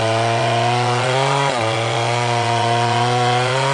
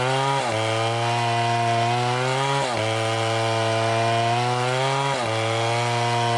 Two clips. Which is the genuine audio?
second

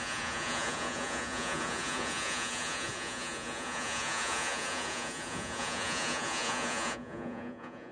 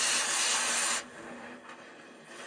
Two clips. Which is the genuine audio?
second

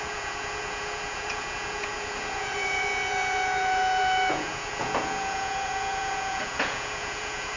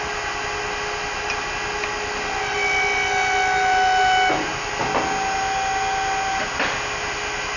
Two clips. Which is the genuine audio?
second